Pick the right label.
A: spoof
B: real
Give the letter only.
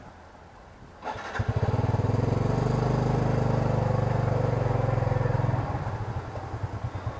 B